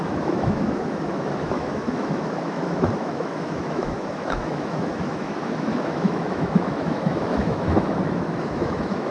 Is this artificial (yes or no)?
yes